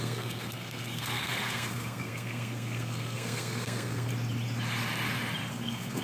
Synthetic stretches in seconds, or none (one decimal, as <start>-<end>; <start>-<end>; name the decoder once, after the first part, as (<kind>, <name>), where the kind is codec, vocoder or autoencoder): 0.0-4.1 (codec, SNAC); 5.5-6.0